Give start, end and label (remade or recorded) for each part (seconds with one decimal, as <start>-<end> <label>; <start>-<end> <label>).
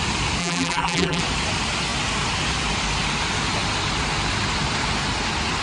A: 0.0-0.4 recorded; 0.4-1.2 remade; 1.2-5.6 recorded